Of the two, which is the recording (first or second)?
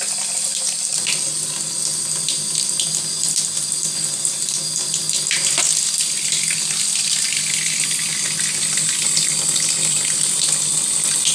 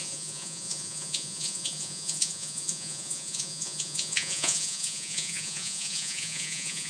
first